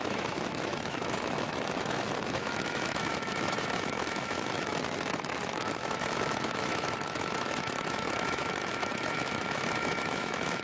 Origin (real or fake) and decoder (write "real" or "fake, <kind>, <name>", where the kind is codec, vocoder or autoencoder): fake, autoencoder, DAC-VAE